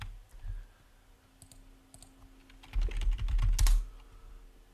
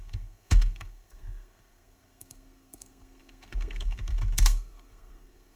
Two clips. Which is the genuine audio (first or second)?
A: first